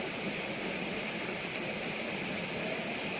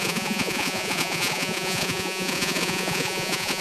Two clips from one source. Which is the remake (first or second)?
second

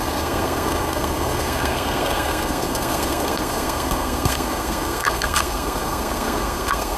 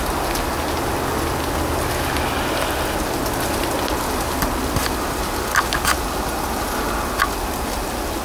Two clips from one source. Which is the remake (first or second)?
first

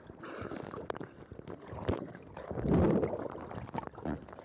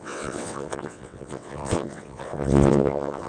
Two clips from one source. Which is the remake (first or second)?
second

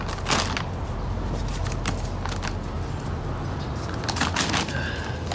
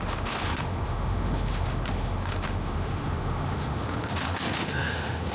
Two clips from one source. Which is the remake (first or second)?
second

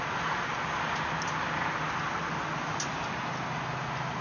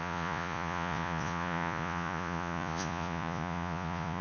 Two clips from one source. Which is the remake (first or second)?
second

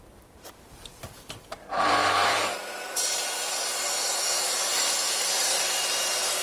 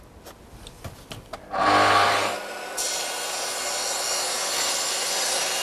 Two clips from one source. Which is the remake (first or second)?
first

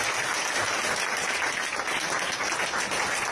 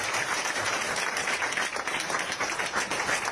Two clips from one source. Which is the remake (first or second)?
second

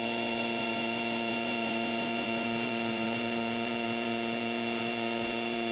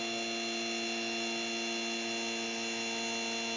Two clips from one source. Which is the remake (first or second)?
first